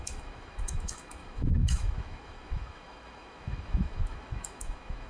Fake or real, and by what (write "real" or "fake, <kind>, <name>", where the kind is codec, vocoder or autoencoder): fake, autoencoder, DAC-VAE